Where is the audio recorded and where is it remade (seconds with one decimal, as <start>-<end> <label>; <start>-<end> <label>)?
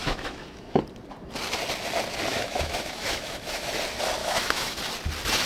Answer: 0.0-0.8 remade; 0.8-2.3 recorded; 2.3-3.7 remade; 3.7-4.2 recorded; 4.2-4.8 remade; 4.8-5.5 recorded